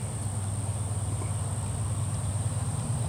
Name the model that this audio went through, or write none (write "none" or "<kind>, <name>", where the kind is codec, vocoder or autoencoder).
none